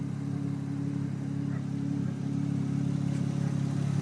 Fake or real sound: real